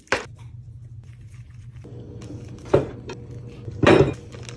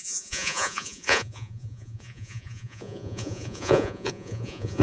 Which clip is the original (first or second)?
first